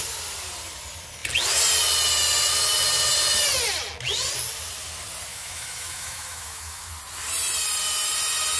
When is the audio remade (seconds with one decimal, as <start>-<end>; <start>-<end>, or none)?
5.3-6.9